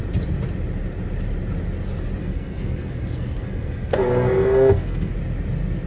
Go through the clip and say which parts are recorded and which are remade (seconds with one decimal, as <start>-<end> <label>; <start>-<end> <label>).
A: 0.0-2.2 recorded; 2.2-5.1 remade; 5.1-5.9 recorded